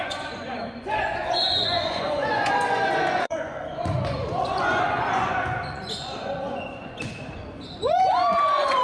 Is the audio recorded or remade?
remade